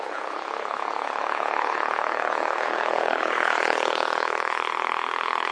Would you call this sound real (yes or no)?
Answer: no